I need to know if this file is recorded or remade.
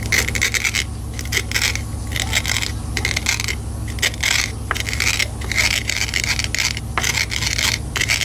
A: recorded